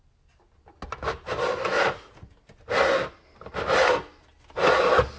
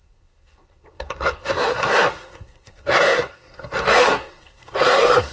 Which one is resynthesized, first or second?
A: second